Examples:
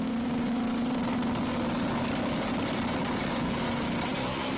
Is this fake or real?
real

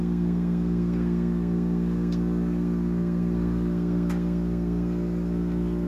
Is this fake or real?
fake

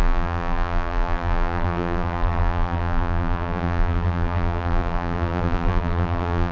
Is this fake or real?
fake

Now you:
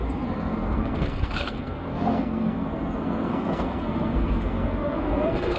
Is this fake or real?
fake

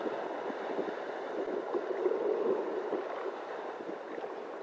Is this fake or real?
real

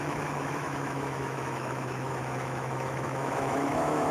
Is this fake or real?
fake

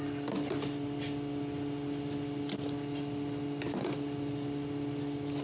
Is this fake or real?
real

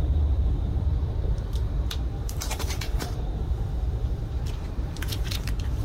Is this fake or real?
fake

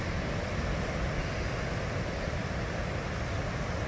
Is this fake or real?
real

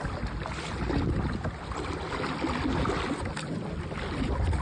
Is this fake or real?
real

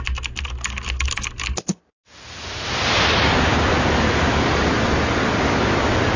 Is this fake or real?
real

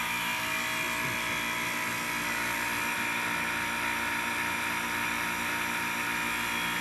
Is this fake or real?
real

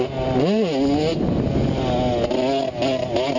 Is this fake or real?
real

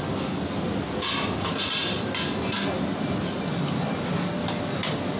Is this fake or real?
real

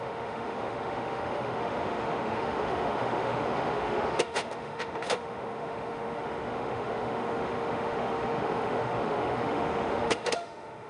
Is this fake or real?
fake